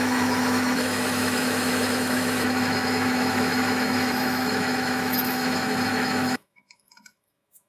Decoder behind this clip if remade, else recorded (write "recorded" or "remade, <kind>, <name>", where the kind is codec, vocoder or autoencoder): remade, autoencoder, DAC-VAE